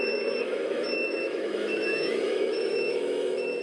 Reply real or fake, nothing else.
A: fake